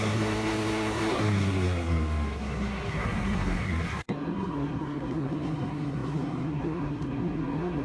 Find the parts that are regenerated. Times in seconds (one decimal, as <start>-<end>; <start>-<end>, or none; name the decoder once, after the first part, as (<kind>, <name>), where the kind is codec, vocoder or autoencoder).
0.0-7.8 (codec, SNAC)